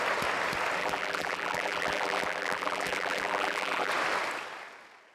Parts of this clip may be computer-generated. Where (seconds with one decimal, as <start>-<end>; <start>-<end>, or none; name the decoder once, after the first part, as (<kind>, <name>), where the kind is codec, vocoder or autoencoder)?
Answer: 0.8-3.9 (vocoder, BigVGAN v2)